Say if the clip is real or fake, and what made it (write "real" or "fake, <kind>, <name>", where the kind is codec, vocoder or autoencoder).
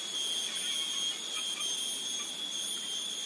real